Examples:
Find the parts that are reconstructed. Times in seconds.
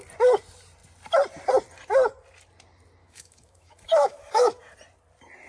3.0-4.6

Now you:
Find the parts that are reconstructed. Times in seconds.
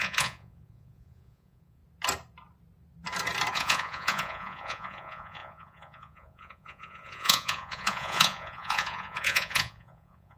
0.0-1.8; 3.5-10.4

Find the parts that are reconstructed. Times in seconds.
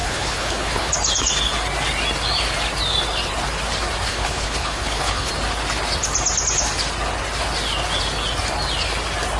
0.0-0.9; 4.1-5.3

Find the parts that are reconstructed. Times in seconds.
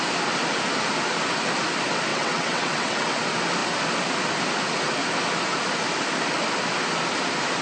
2.1-3.2